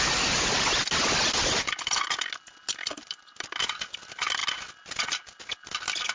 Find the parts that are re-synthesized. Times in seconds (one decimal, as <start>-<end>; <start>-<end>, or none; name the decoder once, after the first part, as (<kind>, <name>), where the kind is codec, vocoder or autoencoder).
none